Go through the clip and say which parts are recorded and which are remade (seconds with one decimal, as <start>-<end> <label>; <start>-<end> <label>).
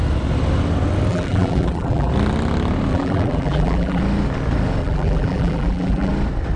0.0-1.1 recorded; 1.1-2.1 remade; 2.1-2.9 recorded; 2.9-4.0 remade; 4.0-4.8 recorded; 4.8-6.1 remade; 6.1-6.6 recorded